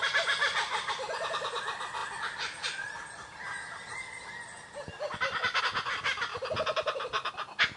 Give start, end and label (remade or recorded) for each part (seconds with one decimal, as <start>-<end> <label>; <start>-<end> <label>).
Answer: 0.0-0.4 recorded; 0.4-1.3 remade; 1.3-6.3 recorded; 6.3-7.3 remade; 7.3-7.8 recorded